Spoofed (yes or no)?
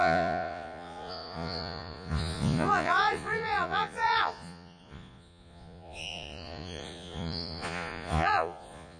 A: yes